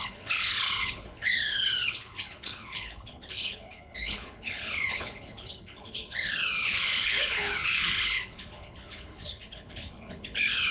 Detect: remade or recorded remade